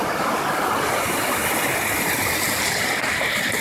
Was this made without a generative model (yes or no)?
yes